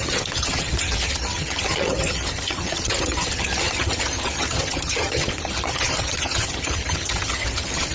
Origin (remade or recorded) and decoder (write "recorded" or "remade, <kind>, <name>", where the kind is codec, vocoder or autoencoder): remade, vocoder, HiFi-GAN